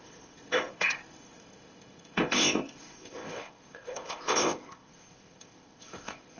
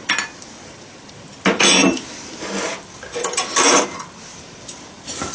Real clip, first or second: second